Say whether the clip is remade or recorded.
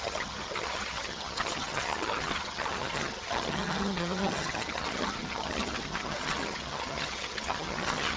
remade